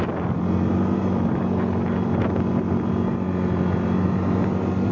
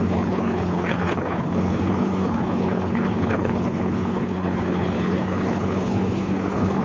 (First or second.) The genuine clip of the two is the first